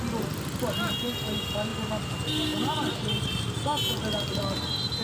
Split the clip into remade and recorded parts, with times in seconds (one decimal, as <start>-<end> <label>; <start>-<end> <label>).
0.0-5.0 recorded